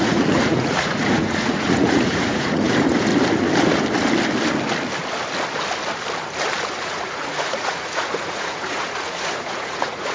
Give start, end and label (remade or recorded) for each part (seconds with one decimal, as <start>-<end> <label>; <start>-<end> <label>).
0.0-3.1 remade; 3.1-6.8 recorded; 6.8-10.1 remade